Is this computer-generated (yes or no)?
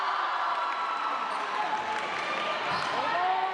no